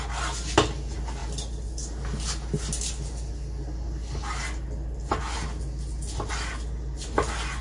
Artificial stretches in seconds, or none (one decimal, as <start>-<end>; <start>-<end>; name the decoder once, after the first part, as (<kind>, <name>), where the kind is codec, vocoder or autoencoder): none